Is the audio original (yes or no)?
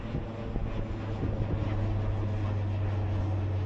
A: yes